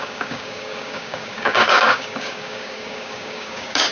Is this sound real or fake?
fake